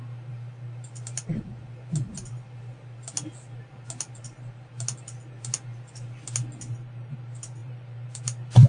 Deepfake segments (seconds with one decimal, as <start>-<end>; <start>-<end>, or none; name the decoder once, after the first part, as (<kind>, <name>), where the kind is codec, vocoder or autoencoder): 7.6-8.7 (vocoder, BigVGAN v2)